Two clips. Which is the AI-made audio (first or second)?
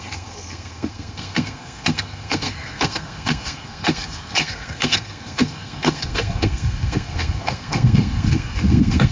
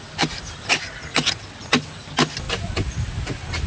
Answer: first